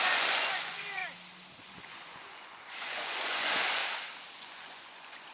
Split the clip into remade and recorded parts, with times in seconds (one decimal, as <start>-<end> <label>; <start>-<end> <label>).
0.0-1.0 remade; 1.0-1.6 recorded; 1.6-3.8 remade; 3.8-4.4 recorded; 4.4-5.3 remade